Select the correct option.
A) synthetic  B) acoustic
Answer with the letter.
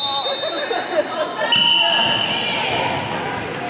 B